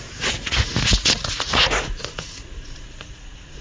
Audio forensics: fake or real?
fake